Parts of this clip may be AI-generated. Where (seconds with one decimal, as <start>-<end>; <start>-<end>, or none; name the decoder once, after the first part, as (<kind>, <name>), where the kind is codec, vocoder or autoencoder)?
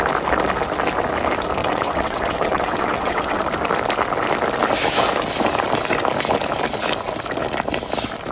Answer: 1.6-3.4 (vocoder, WaveNeXt)